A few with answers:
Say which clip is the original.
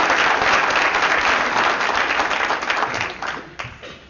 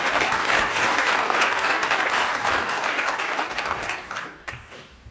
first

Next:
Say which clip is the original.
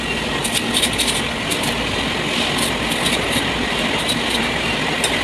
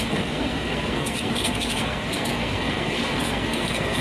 first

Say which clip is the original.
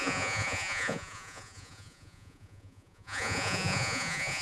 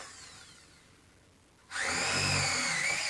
second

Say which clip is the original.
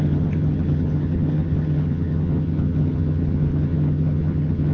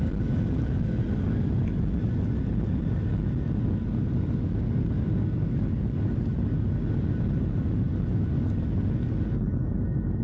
second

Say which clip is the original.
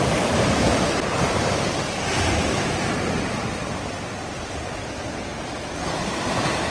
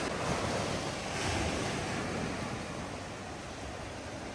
second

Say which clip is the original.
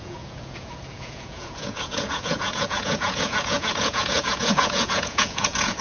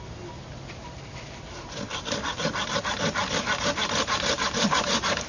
second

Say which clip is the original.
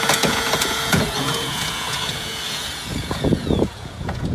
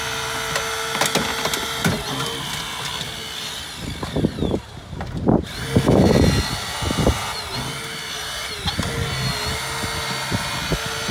second